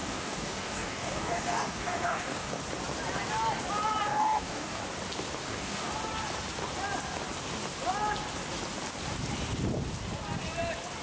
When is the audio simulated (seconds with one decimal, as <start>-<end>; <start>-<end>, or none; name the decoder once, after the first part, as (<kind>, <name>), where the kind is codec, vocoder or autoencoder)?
0.0-2.6 (codec, DAC); 4.1-4.8; 5.4-5.9